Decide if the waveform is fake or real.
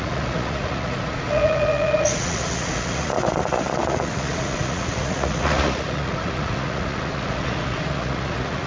fake